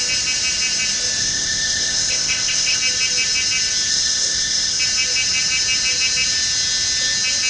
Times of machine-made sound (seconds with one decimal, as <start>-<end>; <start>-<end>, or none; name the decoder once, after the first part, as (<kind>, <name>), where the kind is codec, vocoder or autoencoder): 1.2-2.8 (codec, ZipCodec); 3.9-4.8